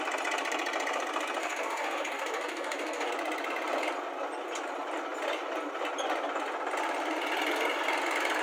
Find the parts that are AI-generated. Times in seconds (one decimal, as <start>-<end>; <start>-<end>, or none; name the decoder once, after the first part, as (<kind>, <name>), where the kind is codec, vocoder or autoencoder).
1.4-3.1 (codec, DAC)